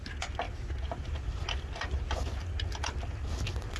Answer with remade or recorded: recorded